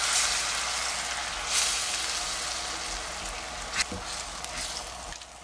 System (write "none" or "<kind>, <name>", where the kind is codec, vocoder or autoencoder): none